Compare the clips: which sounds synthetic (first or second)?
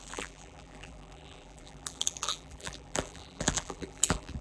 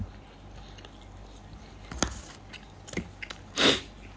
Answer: first